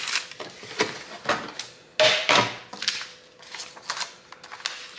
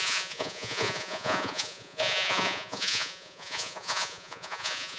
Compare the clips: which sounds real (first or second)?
first